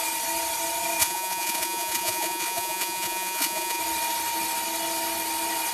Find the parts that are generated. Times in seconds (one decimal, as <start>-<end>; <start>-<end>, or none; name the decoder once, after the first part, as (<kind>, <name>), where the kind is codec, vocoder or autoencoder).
1.0-3.8 (vocoder, Vocos)